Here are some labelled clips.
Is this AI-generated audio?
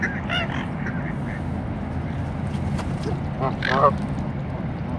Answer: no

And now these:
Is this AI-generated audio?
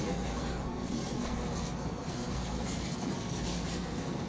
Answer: yes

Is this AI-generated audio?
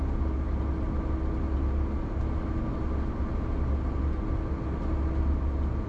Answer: no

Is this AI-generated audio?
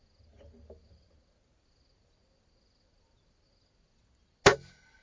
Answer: no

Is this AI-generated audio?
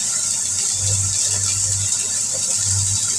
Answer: no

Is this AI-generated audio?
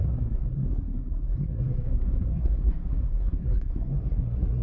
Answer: yes